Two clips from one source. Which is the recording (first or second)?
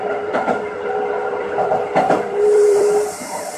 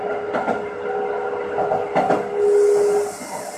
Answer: second